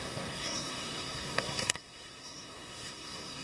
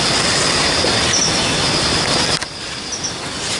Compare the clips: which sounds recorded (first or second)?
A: second